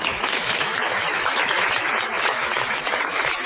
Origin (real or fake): fake